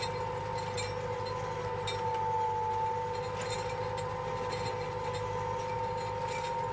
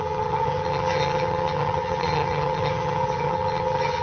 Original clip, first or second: first